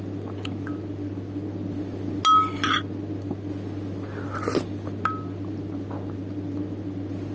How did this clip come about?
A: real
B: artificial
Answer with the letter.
A